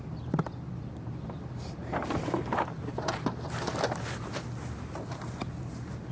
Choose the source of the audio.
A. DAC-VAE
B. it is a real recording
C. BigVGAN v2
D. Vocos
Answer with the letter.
C